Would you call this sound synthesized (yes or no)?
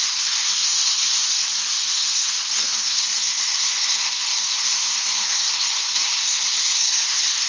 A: yes